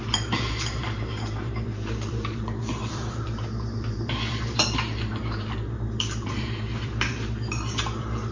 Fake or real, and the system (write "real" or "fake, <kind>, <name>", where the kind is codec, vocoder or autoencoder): fake, vocoder, BigVGAN v2